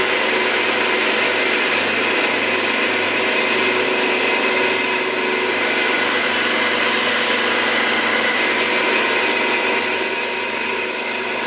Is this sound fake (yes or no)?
no